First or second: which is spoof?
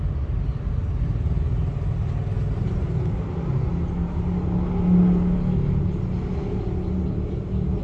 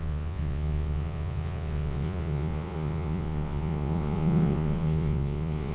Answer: second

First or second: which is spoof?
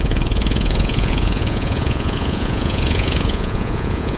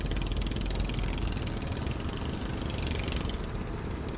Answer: first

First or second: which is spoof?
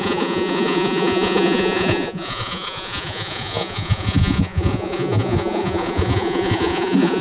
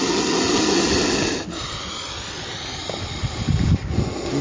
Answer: first